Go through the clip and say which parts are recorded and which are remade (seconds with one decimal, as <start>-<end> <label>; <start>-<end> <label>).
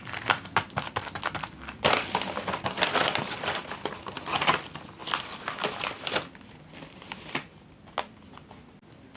0.0-9.2 recorded